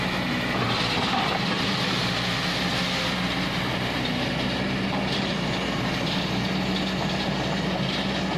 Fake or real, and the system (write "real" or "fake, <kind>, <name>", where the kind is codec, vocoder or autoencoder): real